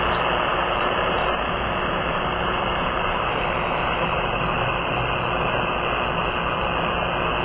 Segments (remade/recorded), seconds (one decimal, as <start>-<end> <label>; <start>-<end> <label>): 0.0-0.5 recorded; 0.5-4.9 remade; 4.9-7.4 recorded